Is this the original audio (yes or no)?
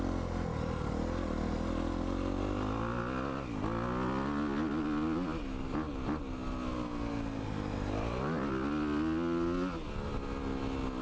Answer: yes